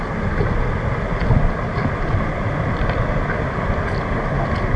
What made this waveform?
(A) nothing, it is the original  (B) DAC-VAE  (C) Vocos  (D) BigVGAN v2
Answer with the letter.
A